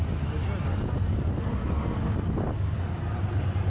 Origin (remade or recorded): recorded